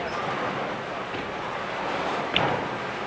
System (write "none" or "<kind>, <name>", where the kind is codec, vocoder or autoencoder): none